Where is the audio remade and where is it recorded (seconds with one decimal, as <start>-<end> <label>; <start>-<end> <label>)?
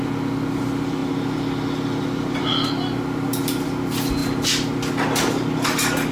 0.0-6.1 recorded